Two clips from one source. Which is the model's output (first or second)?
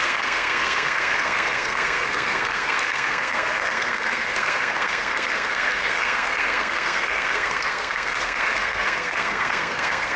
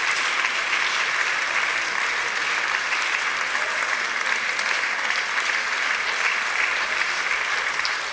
first